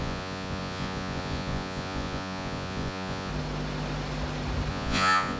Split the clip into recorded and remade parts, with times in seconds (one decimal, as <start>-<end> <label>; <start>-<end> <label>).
0.0-3.3 remade; 3.3-4.7 recorded; 4.7-5.4 remade